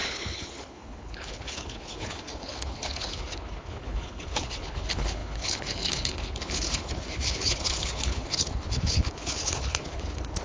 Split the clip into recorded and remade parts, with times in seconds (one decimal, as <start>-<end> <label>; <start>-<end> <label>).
0.0-10.4 remade